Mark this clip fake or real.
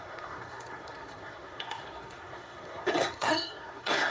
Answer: fake